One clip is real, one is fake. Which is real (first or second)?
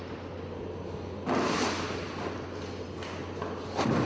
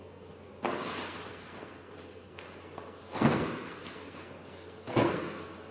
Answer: first